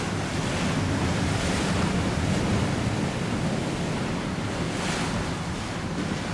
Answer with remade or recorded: recorded